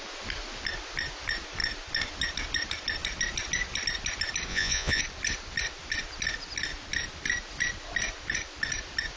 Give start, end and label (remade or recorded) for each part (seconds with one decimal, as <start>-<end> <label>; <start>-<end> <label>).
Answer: 0.0-4.5 recorded; 4.5-5.0 remade; 5.0-9.2 recorded